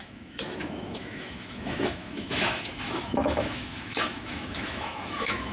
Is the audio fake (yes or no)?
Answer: yes